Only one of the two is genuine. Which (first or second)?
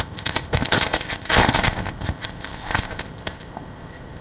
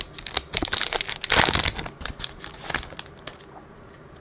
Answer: second